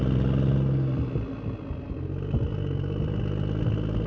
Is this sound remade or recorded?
recorded